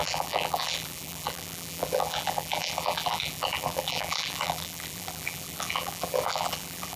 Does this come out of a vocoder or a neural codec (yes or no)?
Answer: yes